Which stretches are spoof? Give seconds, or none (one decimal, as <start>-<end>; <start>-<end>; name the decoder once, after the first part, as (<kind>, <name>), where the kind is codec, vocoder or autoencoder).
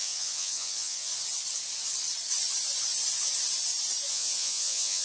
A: 0.0-1.1 (vocoder, Vocos); 4.1-5.0